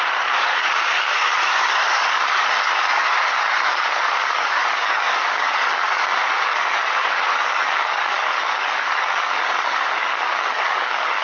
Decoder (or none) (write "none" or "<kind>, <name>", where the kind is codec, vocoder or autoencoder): codec, DAC